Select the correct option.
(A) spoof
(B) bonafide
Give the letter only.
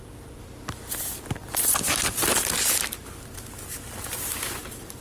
B